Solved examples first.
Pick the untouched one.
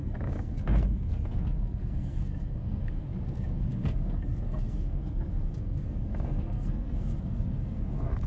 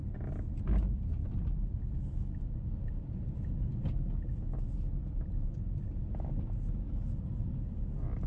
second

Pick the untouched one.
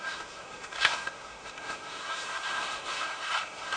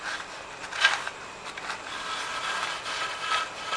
second